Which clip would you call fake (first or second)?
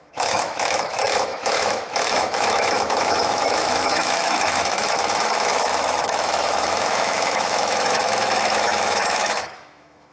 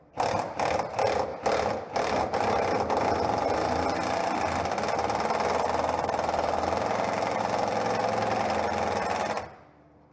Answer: first